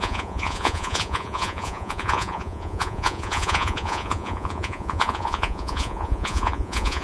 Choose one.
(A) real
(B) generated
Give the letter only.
B